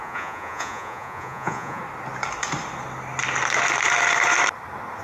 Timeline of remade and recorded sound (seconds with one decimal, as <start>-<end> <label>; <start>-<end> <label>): 0.0-1.8 remade; 1.8-5.0 recorded